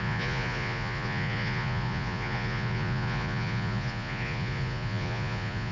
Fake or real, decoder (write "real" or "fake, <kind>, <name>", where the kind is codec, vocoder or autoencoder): fake, vocoder, Vocos